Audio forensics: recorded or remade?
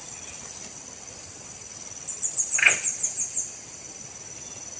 recorded